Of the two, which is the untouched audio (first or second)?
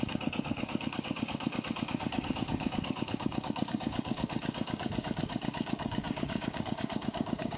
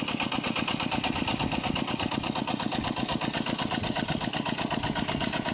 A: second